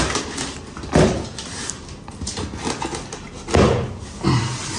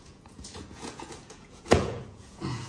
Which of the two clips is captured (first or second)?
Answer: first